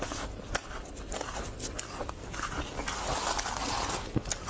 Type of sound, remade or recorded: recorded